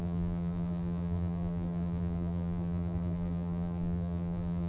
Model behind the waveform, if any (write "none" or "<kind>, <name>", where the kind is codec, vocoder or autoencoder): vocoder, BigVGAN v2